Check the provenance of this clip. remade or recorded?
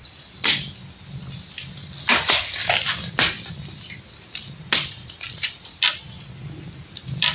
recorded